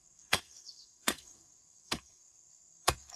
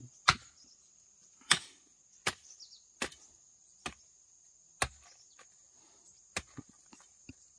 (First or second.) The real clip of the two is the second